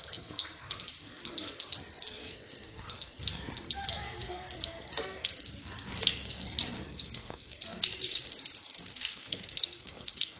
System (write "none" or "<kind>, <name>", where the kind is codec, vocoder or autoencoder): codec, SNAC